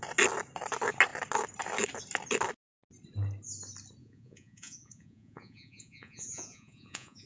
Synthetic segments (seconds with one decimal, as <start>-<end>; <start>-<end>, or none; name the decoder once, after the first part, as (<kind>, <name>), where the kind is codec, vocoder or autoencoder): 4.0-7.3 (vocoder, Vocos)